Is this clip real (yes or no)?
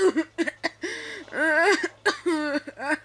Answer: yes